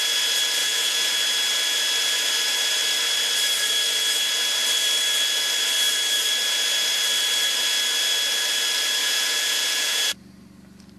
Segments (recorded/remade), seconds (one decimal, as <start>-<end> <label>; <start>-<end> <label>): 0.0-0.6 recorded; 0.6-1.1 remade; 1.1-9.0 recorded; 9.0-10.1 remade; 10.1-11.0 recorded